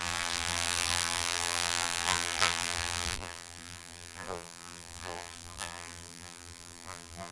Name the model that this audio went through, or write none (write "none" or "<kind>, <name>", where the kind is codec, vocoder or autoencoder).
vocoder, BigVGAN v2